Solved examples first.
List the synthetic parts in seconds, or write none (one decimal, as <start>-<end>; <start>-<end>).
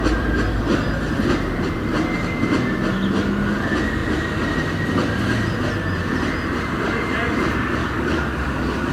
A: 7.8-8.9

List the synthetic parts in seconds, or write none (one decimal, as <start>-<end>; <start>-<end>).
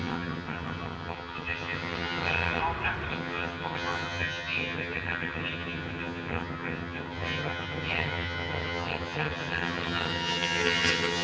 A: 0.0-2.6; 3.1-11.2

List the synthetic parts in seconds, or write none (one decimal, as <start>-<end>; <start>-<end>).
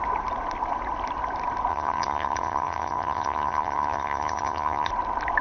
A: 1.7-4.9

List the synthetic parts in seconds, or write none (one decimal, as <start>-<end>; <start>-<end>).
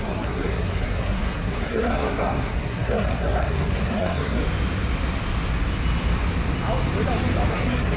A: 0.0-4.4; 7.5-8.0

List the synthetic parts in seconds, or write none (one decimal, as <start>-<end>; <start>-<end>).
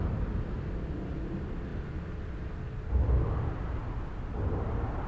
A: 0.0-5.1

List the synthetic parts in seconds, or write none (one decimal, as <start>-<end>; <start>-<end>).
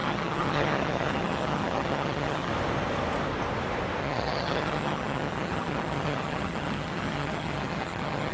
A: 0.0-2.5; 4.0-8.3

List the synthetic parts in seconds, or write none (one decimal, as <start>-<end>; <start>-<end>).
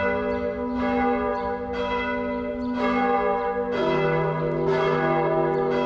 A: none